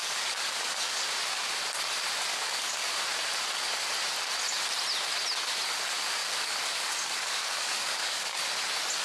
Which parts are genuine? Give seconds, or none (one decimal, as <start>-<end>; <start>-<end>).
1.0-2.3; 3.0-6.2; 8.4-9.0